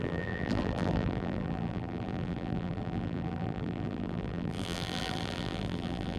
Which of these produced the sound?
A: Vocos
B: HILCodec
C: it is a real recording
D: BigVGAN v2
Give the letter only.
D